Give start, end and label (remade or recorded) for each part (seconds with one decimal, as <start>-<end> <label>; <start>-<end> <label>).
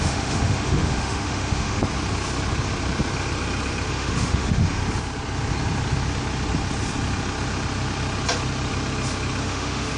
0.0-1.8 remade; 1.8-3.9 recorded; 3.9-4.8 remade; 4.8-9.4 recorded; 9.4-10.0 remade